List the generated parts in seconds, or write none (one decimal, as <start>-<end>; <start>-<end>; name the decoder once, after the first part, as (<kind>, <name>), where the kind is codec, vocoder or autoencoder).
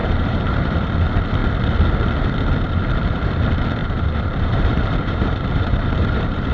0.0-0.9 (vocoder, BigVGAN v2); 3.8-6.5